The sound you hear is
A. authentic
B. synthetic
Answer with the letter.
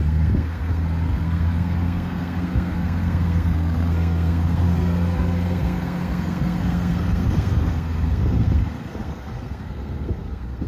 B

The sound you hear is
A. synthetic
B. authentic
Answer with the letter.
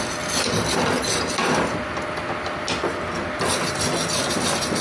B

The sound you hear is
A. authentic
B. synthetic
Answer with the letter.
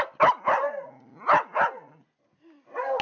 A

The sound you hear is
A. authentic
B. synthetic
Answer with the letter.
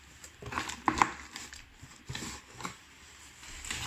A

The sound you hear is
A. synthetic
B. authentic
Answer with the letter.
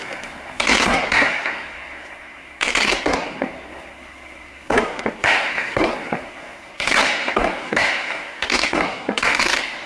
A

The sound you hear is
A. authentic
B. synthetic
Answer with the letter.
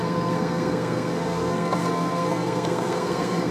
B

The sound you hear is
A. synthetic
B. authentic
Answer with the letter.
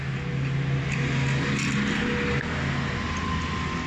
B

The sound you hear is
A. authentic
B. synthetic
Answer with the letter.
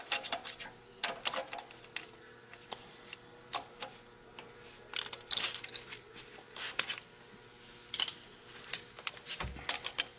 A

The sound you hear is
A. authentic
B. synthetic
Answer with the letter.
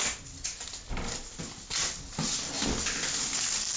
A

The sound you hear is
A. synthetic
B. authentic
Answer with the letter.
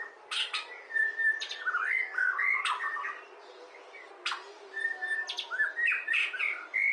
B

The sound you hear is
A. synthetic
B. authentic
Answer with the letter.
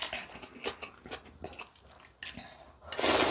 B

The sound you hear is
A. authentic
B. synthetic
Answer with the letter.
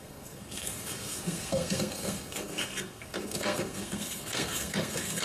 B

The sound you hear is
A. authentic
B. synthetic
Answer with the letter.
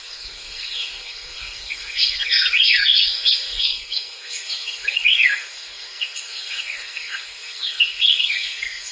B